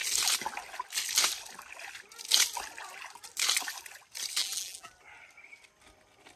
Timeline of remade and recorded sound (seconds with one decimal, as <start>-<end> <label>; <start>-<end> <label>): 0.0-4.4 recorded; 4.4-4.9 remade; 4.9-6.4 recorded